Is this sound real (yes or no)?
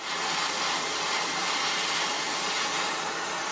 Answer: yes